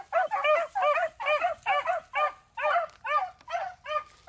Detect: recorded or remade recorded